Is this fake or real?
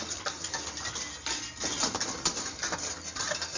real